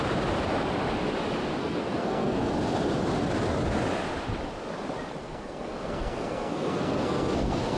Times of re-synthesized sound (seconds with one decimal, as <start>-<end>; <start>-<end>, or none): 1.6-2.5; 5.2-7.8